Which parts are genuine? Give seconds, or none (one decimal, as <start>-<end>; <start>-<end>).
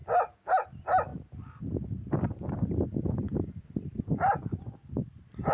0.0-5.5